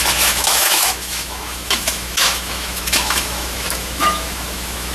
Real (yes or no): no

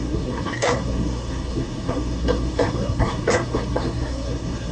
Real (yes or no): no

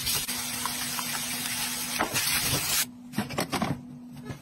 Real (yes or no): yes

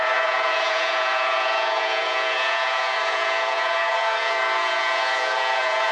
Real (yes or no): no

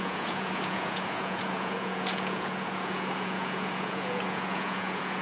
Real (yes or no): no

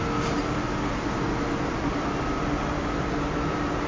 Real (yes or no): yes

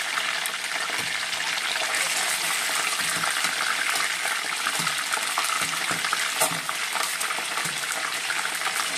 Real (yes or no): yes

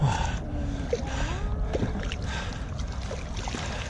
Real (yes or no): yes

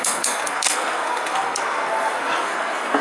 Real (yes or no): no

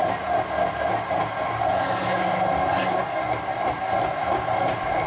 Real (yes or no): yes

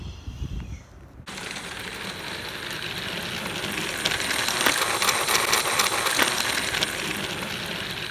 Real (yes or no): yes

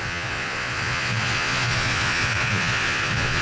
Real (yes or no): no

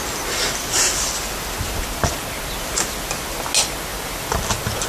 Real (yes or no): yes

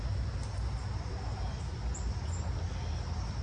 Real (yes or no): yes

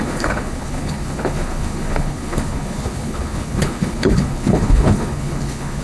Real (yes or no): no